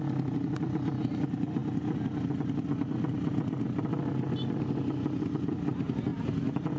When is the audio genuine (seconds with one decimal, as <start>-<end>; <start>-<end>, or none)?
0.0-6.8